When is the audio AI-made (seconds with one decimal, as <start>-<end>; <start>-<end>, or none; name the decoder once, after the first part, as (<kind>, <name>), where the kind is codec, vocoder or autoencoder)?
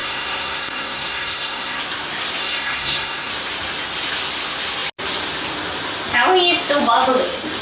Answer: 0.0-1.8 (codec, SNAC); 2.4-3.3